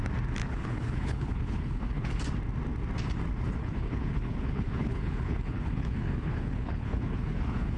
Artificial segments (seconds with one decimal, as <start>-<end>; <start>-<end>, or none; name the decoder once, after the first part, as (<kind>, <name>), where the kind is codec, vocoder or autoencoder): 0.4-2.2 (codec, HILCodec); 3.6-7.8